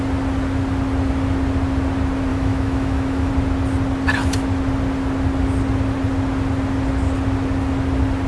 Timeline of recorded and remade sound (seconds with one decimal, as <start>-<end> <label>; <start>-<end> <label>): 0.0-2.3 recorded; 2.3-3.3 remade; 3.3-8.3 recorded